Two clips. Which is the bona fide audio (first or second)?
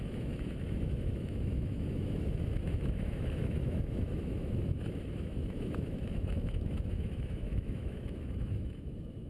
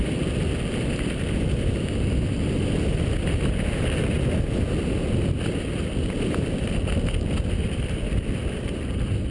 second